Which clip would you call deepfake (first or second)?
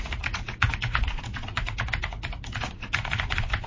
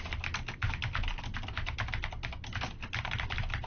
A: first